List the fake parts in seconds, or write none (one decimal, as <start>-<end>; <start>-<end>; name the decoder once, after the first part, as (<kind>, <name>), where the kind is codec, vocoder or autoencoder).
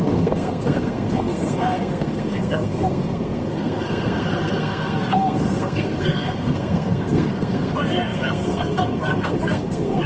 0.0-10.1 (codec, SNAC)